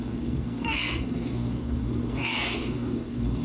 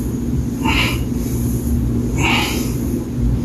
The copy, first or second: first